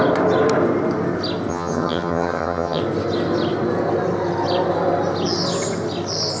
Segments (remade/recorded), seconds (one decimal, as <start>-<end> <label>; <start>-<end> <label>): 0.0-1.5 recorded; 1.5-2.8 remade; 2.8-6.4 recorded